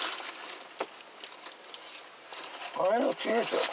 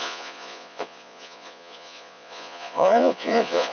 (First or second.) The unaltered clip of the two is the first